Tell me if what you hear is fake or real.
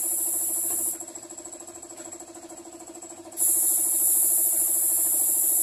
real